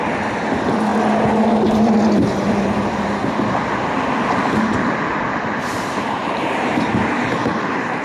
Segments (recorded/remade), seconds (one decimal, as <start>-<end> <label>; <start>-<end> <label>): 0.0-6.2 recorded; 6.2-7.6 remade; 7.6-8.0 recorded